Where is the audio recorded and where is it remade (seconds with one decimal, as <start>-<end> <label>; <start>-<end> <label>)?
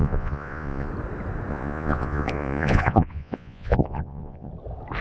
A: 0.0-0.9 remade; 0.9-1.5 recorded; 1.5-4.5 remade; 4.5-5.0 recorded